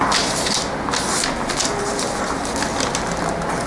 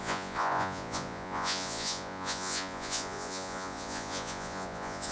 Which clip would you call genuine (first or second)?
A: first